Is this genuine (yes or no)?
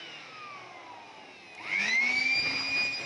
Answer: yes